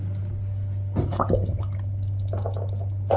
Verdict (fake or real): real